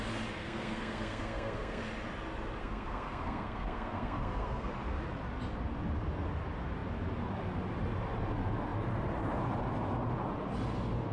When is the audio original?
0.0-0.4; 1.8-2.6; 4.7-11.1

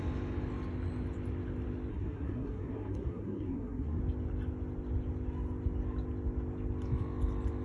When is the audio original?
0.0-1.9; 4.0-7.6

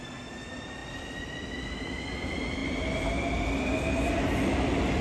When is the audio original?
0.0-5.0

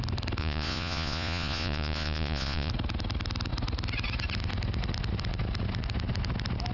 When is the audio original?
0.0-0.4; 2.7-6.7